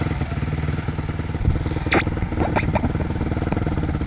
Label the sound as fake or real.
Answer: real